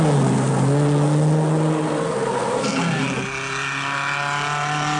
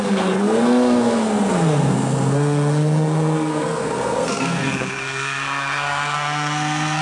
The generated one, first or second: second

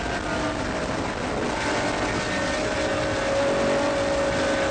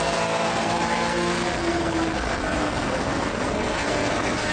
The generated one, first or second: second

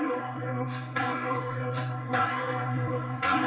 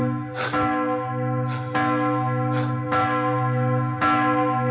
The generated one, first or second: first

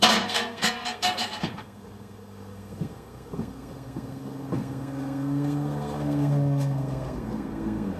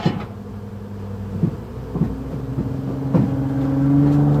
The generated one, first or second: first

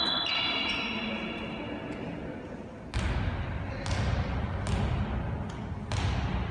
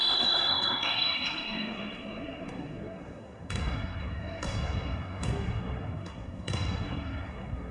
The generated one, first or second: second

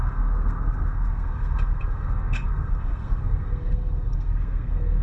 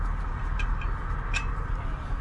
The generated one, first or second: first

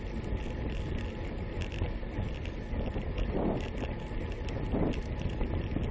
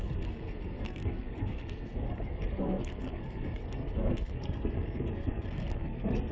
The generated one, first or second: second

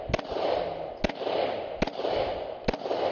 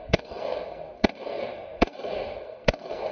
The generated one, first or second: second